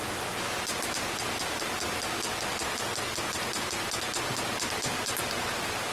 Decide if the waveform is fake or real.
real